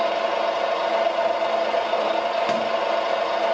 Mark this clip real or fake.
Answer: real